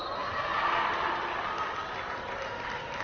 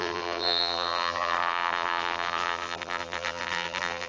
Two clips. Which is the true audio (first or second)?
first